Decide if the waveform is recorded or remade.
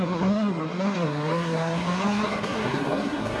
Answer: remade